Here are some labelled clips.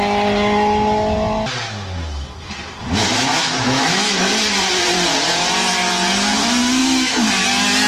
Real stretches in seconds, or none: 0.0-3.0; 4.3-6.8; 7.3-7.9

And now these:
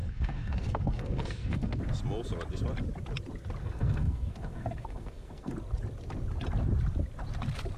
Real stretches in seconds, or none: 1.8-3.6; 5.5-7.8

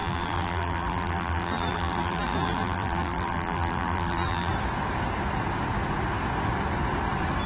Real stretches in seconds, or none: 4.5-7.5

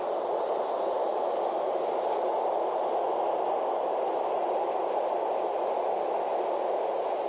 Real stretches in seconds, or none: 0.0-1.0; 1.6-7.3

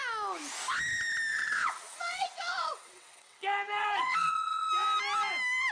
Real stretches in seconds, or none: 0.0-1.3; 4.7-5.7

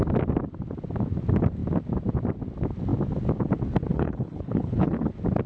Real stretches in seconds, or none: 0.0-3.9; 5.1-5.5

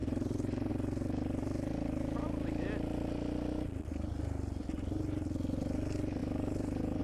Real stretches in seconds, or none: 0.7-6.2